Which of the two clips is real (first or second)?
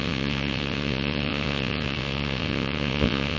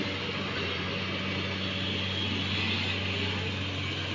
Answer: second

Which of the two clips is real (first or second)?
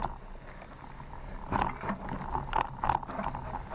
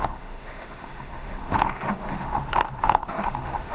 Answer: first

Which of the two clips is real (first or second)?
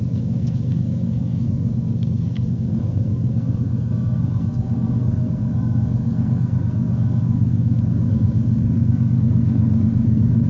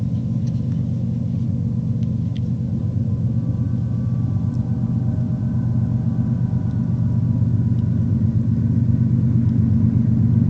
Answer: second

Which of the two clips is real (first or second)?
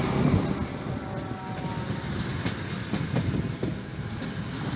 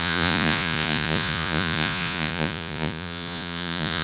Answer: first